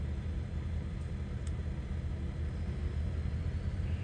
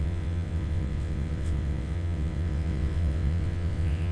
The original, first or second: first